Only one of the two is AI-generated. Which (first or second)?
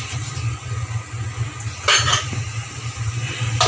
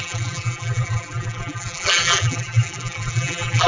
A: second